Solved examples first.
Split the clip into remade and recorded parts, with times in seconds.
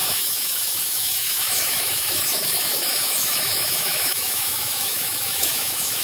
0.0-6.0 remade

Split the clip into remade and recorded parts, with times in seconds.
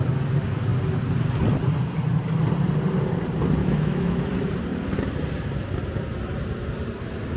0.0-3.6 recorded; 3.6-4.2 remade; 4.2-7.4 recorded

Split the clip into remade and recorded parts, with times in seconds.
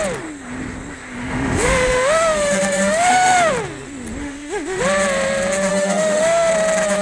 0.0-1.2 recorded; 1.2-3.5 remade; 3.5-4.2 recorded; 4.2-4.8 remade; 4.8-5.7 recorded; 5.7-6.5 remade; 6.5-7.0 recorded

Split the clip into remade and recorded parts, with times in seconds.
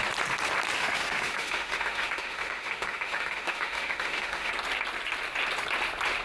0.0-0.8 recorded; 0.8-4.5 remade; 4.5-6.2 recorded